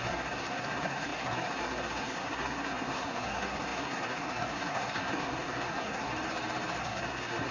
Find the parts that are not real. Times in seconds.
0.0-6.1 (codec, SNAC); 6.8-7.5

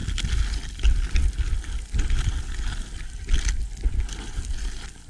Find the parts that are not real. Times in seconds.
none

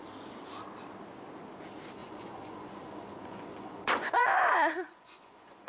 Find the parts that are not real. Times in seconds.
2.0-5.7 (vocoder, Vocos)